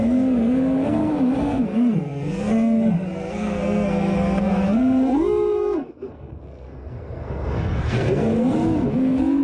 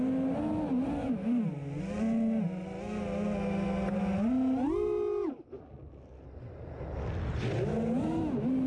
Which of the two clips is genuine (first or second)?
second